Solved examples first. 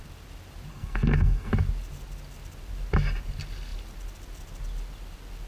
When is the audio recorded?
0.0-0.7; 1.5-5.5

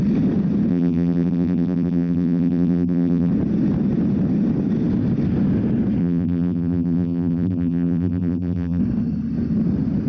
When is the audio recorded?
0.0-0.7; 3.3-6.0; 8.8-10.1